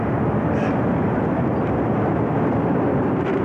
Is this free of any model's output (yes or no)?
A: yes